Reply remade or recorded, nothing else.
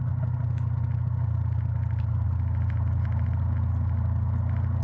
recorded